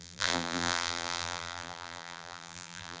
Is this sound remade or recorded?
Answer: remade